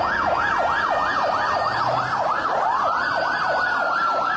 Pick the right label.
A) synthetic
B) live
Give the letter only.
B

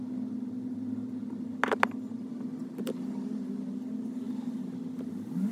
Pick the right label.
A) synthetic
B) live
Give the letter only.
B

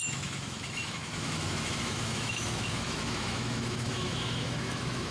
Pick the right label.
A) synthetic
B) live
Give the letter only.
A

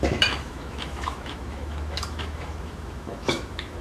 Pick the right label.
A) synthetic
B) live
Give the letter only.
A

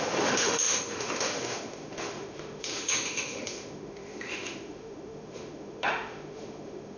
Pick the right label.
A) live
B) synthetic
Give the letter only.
B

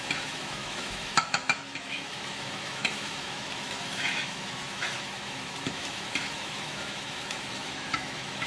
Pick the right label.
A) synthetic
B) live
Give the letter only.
A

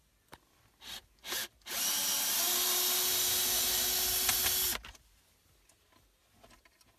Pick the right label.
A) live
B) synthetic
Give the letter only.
A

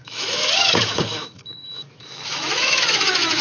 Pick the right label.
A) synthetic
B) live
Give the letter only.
A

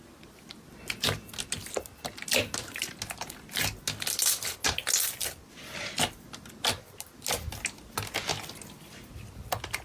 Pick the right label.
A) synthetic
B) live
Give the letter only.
B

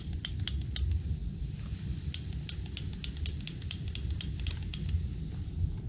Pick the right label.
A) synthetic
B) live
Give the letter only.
B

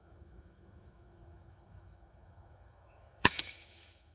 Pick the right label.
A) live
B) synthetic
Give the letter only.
B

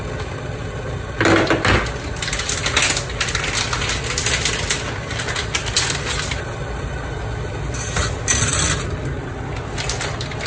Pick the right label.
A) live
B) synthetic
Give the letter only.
A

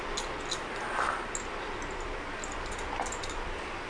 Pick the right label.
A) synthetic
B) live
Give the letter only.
B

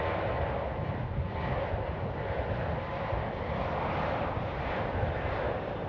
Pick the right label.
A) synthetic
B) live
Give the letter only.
B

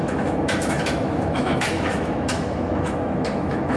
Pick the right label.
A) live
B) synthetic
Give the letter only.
B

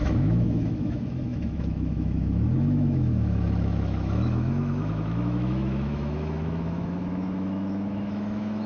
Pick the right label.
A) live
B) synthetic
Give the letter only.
B